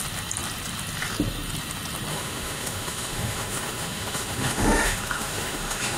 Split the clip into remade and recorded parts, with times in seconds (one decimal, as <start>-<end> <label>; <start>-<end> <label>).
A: 0.0-2.1 recorded; 2.1-6.0 remade